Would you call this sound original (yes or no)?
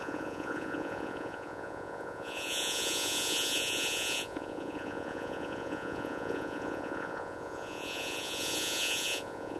no